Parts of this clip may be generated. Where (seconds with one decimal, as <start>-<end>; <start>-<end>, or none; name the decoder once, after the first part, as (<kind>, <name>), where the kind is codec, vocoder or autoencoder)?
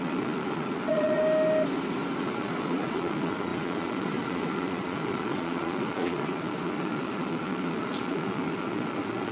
0.0-1.2 (vocoder, Vocos); 2.2-9.3